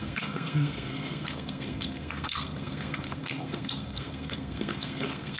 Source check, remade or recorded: remade